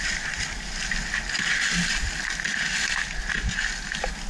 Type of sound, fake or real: real